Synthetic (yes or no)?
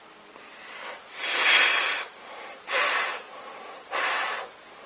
no